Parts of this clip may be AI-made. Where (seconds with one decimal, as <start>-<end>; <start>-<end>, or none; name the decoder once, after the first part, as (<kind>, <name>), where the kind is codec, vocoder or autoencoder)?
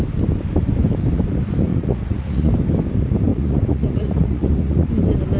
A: 1.7-2.5 (vocoder, Vocos); 3.3-4.9